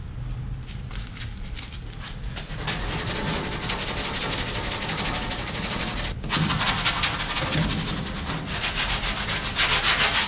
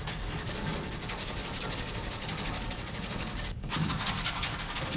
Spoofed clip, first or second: second